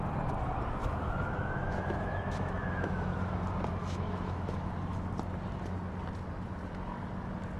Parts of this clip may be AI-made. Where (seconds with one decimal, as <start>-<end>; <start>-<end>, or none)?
0.8-3.3; 3.8-4.7